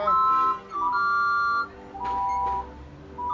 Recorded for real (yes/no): yes